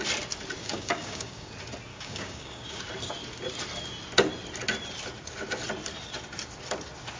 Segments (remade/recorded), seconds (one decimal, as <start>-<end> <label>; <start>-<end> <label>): 0.0-0.6 recorded; 0.6-1.5 remade; 1.5-1.9 recorded; 1.9-2.8 remade; 2.8-7.2 recorded